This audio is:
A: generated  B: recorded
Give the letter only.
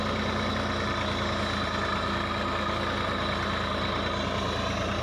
B